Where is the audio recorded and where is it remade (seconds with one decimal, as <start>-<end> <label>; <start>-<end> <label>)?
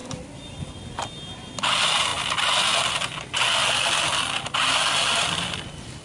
0.0-6.0 recorded